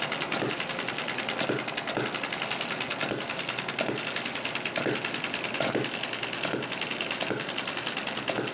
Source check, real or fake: real